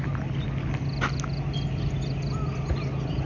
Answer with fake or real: real